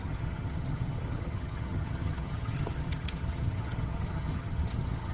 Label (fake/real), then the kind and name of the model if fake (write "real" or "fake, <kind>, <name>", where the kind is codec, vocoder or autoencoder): fake, vocoder, HiFi-GAN